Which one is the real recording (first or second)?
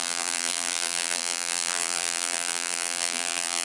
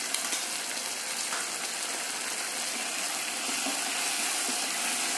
second